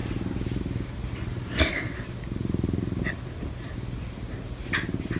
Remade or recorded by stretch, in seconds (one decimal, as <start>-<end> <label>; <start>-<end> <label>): 0.0-5.2 recorded